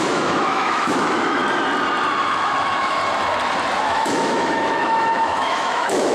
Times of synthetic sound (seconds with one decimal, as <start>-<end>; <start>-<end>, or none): 0.0-1.4; 2.2-3.0; 3.8-6.1